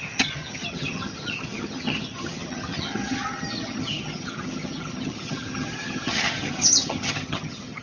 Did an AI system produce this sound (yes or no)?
yes